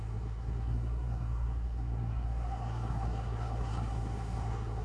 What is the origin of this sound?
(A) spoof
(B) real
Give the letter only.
A